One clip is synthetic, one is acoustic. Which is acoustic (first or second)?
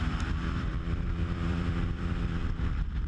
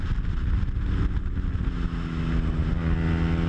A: second